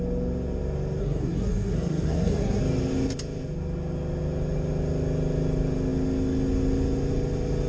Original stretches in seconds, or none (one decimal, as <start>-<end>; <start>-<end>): 0.0-1.0; 2.6-7.7